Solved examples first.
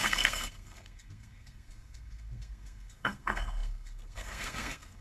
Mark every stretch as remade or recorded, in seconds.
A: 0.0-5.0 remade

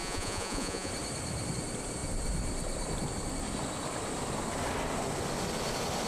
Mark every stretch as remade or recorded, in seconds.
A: 0.0-0.9 remade; 0.9-6.1 recorded

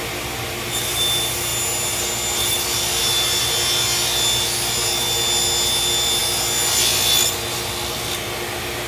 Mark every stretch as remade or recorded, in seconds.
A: 0.0-8.9 recorded

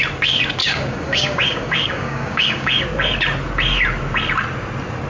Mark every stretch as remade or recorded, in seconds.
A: 0.0-0.6 recorded; 0.6-2.8 remade; 2.8-5.1 recorded

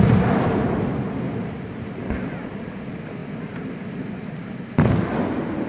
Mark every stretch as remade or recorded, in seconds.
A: 0.0-1.4 recorded; 1.4-2.7 remade; 2.7-5.7 recorded

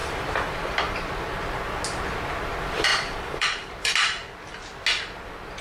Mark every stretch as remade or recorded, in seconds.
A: 0.0-1.1 remade; 1.1-2.9 recorded; 2.9-3.9 remade; 3.9-5.6 recorded